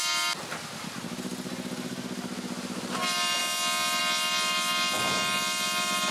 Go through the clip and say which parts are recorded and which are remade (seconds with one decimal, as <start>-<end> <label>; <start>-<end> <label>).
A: 0.0-6.1 recorded